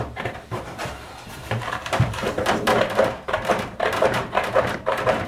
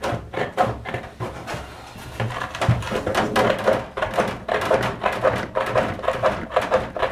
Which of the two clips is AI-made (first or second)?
first